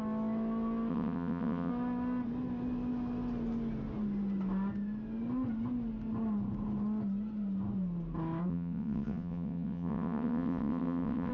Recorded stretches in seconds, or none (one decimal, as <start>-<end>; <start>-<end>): 0.0-0.9; 1.7-8.5